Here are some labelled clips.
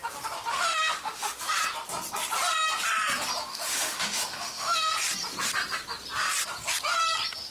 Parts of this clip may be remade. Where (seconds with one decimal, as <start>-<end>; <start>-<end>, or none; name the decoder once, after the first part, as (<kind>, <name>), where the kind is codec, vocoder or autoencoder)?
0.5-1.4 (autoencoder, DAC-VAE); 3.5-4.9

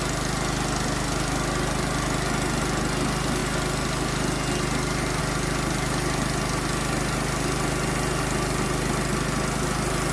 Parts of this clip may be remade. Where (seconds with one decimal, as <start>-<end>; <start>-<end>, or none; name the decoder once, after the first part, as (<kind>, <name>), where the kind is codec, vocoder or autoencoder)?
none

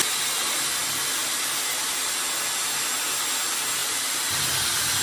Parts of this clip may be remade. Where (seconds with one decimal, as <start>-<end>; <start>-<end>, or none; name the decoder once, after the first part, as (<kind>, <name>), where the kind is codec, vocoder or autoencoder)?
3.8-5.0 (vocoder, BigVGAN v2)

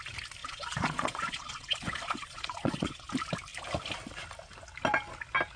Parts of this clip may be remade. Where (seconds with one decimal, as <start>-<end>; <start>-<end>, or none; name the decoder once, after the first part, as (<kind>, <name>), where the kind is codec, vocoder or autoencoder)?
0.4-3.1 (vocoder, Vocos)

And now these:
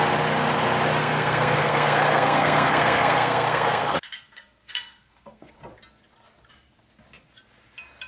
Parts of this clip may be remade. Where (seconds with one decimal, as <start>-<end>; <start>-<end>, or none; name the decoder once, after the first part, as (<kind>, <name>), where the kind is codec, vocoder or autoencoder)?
1.0-5.5 (codec, SNAC)

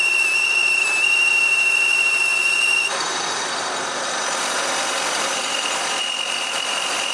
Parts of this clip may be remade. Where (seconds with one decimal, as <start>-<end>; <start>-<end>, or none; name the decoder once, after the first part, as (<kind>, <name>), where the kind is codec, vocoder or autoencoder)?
none

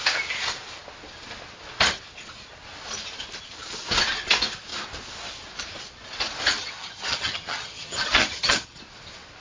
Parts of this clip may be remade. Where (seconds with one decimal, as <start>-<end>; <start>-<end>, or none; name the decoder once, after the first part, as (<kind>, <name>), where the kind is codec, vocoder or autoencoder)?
6.6-8.8 (vocoder, HiFi-GAN)